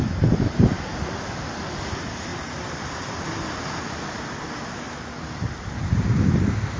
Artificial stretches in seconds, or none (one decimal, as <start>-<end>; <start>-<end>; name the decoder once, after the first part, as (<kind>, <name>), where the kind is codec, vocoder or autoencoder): none